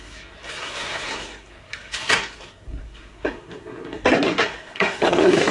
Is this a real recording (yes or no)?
no